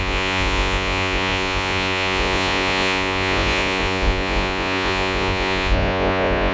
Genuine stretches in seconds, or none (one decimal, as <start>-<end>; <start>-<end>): none